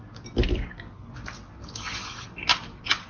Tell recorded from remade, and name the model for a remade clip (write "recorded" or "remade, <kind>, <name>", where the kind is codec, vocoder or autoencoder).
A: recorded